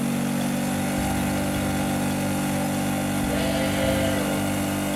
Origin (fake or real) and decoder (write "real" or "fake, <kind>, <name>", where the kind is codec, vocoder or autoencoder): real